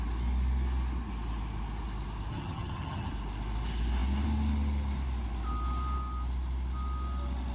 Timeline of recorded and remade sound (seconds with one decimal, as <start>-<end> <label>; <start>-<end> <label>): 0.0-2.3 recorded; 2.3-3.1 remade; 3.1-7.5 recorded